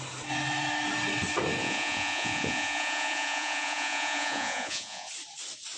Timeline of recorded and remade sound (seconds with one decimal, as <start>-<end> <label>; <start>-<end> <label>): 0.0-1.6 recorded; 1.6-5.1 remade; 5.1-5.8 recorded